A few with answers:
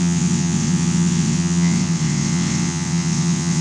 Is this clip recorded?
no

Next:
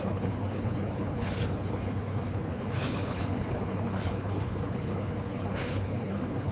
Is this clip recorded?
no